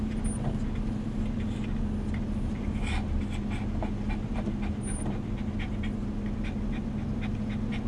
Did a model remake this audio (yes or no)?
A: no